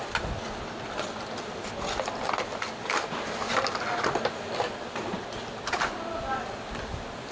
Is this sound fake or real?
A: real